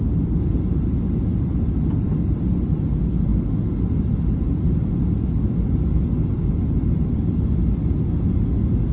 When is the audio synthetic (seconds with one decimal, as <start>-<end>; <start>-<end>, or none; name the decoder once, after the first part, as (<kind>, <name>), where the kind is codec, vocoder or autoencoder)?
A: none